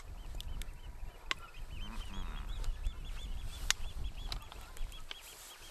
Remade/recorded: recorded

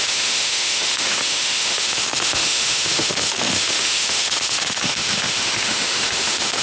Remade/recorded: remade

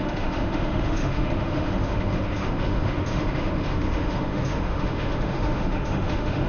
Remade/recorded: remade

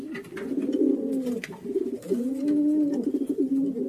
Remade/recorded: recorded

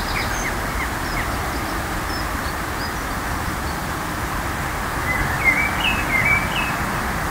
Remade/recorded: recorded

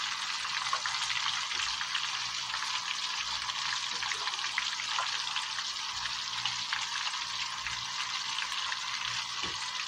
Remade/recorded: recorded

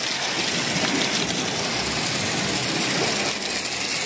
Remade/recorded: recorded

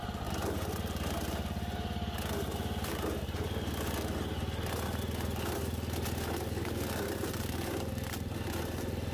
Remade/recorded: recorded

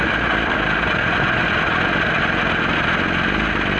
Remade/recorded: recorded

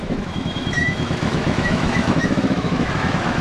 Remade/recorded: remade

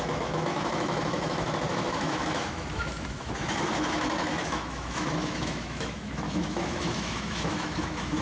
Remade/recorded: remade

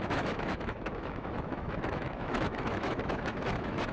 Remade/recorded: remade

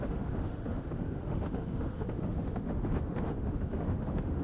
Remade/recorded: remade